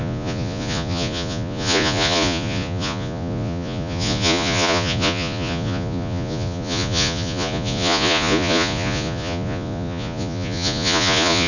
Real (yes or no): no